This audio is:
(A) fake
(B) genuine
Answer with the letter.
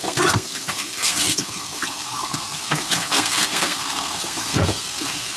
A